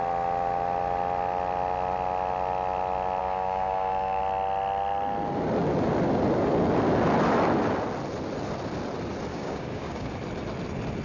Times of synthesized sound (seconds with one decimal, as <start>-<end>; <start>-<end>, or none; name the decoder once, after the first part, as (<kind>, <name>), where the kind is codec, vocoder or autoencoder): 3.2-4.2 (codec, DAC); 9.3-10.1